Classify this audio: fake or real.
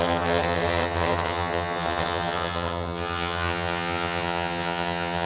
fake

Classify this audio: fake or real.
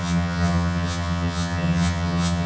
fake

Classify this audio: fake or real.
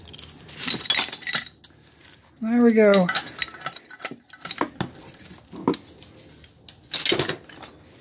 real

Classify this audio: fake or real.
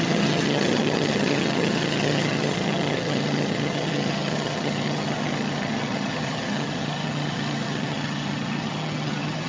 fake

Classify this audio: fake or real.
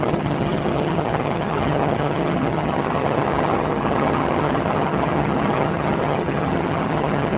fake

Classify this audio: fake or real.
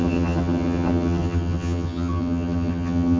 fake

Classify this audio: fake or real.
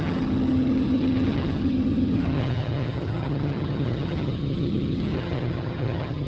fake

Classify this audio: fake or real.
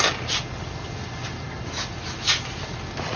real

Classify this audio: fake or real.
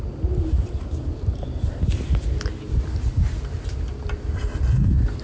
real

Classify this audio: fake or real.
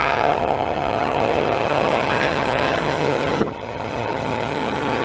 fake